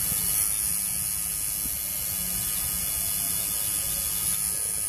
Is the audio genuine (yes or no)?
yes